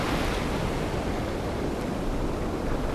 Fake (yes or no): no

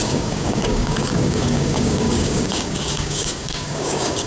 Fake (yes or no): yes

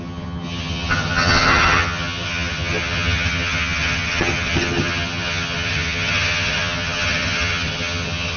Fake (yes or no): yes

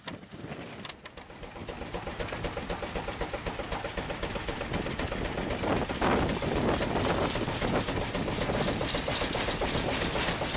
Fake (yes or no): no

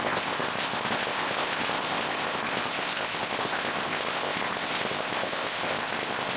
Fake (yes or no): yes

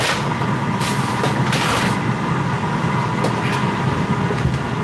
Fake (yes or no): no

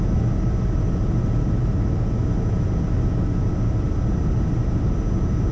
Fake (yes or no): no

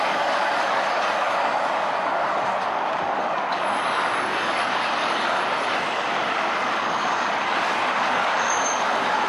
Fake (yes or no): yes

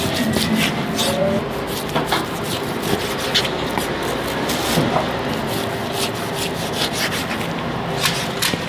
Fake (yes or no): no